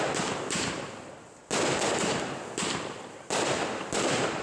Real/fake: real